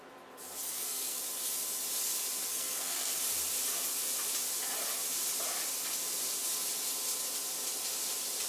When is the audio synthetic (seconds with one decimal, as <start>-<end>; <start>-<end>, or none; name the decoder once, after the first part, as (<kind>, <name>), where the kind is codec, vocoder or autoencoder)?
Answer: 0.6-1.2 (codec, SNAC); 2.5-3.2